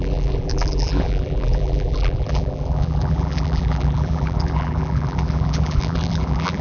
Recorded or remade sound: remade